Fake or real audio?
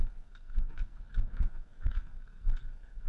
fake